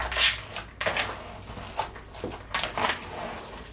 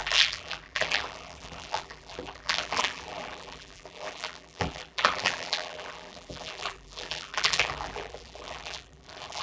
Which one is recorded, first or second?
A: first